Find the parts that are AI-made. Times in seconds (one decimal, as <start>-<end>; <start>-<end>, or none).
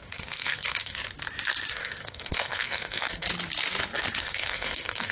0.0-1.0; 1.7-3.3; 4.2-5.1